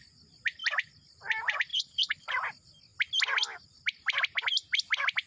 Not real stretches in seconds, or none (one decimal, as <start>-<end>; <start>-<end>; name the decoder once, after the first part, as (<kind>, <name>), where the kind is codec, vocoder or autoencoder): 1.7-2.3 (codec, HILCodec)